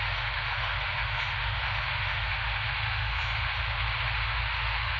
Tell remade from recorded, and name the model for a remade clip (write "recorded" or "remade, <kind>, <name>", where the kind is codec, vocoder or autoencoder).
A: remade, autoencoder, DAC-VAE